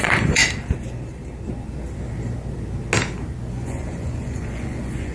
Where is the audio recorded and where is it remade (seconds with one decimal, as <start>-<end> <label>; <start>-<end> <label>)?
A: 0.0-0.4 remade; 0.4-3.5 recorded; 3.5-5.1 remade